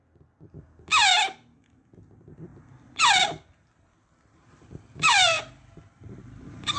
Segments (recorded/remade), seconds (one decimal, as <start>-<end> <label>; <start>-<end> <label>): 0.0-2.5 recorded; 2.5-6.8 remade